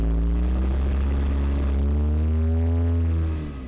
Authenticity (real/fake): real